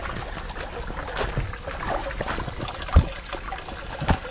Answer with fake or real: real